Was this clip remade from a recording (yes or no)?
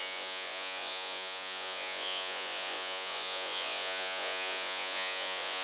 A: yes